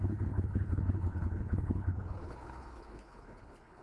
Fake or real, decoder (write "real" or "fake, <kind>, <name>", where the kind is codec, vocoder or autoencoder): fake, codec, HILCodec